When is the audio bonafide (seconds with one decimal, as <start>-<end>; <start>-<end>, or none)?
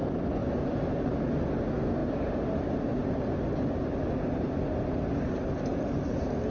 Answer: 0.0-0.4; 1.0-5.7